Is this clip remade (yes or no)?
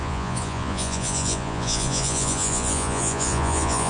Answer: yes